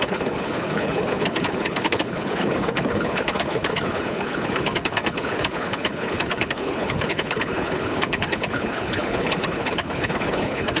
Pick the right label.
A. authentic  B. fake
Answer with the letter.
B